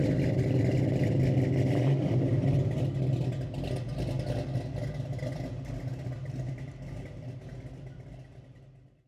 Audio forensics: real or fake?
real